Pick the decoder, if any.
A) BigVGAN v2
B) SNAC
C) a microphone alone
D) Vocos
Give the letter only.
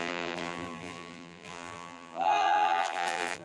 A